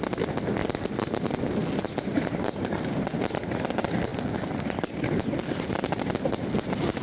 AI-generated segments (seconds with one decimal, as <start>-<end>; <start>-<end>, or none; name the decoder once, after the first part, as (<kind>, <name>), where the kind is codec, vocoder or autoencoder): 2.1-3.4 (vocoder, BigVGAN v2)